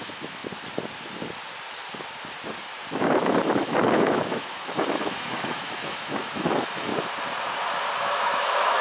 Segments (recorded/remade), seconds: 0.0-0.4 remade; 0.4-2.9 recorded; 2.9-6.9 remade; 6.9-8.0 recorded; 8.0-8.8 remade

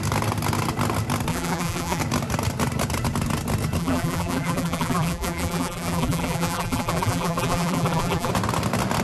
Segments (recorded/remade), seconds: 0.0-1.3 recorded; 1.3-2.0 remade; 2.0-3.8 recorded; 3.8-8.3 remade; 8.3-9.0 recorded

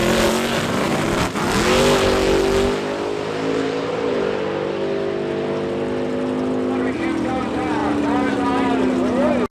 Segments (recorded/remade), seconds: 0.0-9.5 recorded

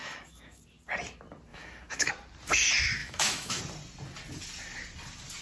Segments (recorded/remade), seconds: 0.0-0.6 remade; 0.6-1.5 recorded; 1.5-2.1 remade; 2.1-3.0 recorded; 3.0-3.6 remade; 3.6-5.4 recorded

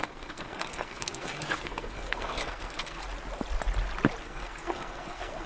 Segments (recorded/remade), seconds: 0.0-3.0 remade; 3.0-4.2 recorded; 4.2-5.5 remade

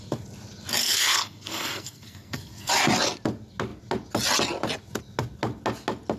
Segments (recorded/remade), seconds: 0.0-0.8 recorded; 0.8-2.7 remade; 2.7-6.2 recorded